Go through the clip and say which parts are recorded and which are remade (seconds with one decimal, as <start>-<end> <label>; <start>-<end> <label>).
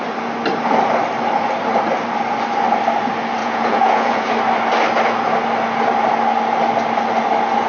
0.0-3.4 recorded; 3.4-4.3 remade; 4.3-7.7 recorded